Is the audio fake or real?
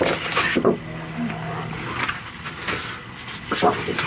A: real